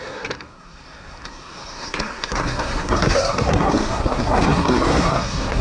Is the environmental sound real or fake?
fake